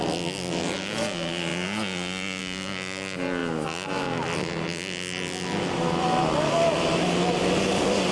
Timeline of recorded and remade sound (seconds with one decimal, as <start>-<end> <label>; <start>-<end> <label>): 0.0-8.1 recorded